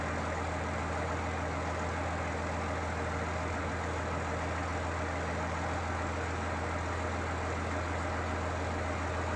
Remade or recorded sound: recorded